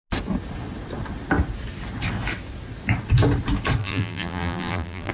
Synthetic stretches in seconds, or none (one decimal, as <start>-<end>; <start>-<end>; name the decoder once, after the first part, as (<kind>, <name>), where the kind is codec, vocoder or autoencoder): 3.8-5.1 (vocoder, BigVGAN v2)